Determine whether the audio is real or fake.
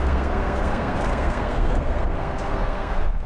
fake